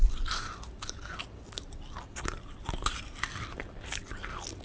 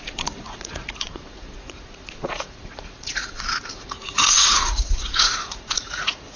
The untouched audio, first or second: first